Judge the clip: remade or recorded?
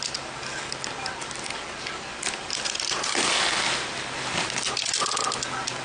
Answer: recorded